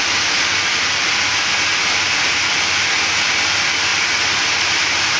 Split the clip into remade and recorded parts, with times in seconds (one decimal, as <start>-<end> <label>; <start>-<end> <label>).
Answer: 0.0-5.2 recorded

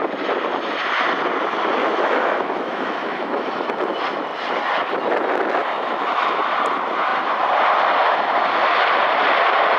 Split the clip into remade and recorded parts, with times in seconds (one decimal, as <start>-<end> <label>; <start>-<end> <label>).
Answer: 0.0-1.8 recorded; 1.8-3.4 remade; 3.4-5.6 recorded; 5.6-6.4 remade; 6.4-9.8 recorded

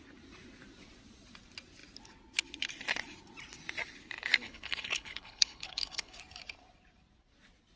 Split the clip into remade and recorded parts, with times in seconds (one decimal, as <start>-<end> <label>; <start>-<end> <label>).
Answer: 0.0-4.4 recorded; 4.4-6.2 remade; 6.2-7.8 recorded

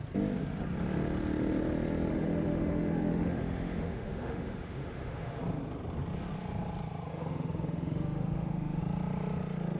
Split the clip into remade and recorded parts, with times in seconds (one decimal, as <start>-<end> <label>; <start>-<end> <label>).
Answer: 0.0-2.1 recorded; 2.1-5.4 remade; 5.4-7.1 recorded; 7.1-8.8 remade; 8.8-9.8 recorded

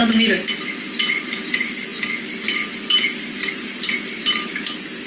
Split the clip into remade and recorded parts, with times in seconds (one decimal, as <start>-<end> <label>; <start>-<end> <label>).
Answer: 0.0-5.1 recorded

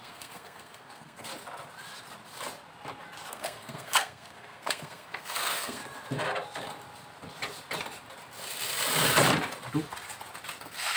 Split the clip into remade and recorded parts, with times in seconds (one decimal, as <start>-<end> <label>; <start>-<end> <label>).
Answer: 0.0-1.3 remade; 1.3-3.3 recorded; 3.3-5.8 remade; 5.8-10.6 recorded; 10.6-11.0 remade

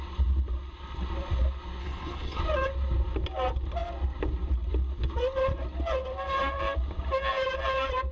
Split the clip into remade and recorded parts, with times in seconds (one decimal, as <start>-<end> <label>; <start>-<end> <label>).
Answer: 0.0-1.8 recorded; 1.8-2.4 remade; 2.4-8.1 recorded

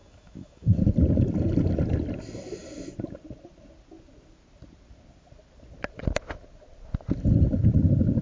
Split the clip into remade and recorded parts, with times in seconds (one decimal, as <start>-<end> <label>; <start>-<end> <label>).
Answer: 0.0-0.8 remade; 0.8-8.2 recorded